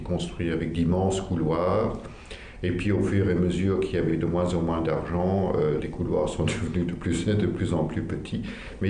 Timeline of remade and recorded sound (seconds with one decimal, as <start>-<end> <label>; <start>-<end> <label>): 0.0-8.9 recorded